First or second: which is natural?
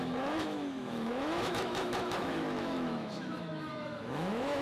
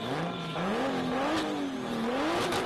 second